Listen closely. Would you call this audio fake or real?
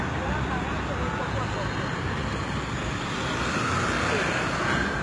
real